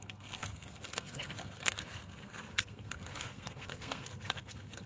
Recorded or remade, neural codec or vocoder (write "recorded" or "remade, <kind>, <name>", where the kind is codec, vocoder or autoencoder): remade, codec, SNAC